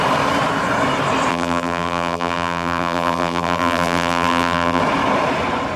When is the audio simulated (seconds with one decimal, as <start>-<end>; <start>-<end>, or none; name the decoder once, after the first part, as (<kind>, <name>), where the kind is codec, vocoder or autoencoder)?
1.3-4.8 (vocoder, BigVGAN v2)